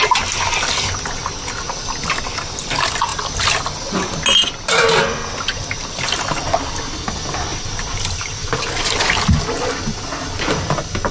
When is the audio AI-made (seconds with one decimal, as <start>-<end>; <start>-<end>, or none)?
5.5-6.4; 7.5-8.0; 8.4-9.2